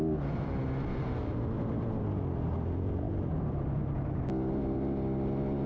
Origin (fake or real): real